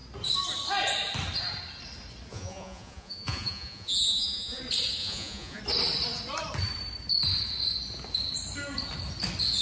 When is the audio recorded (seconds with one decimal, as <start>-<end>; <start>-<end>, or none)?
0.0-2.3; 4.6-5.0; 5.6-9.6